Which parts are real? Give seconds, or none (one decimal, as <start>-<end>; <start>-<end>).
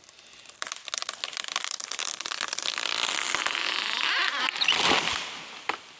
0.0-1.0; 3.1-6.0